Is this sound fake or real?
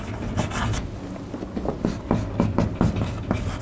real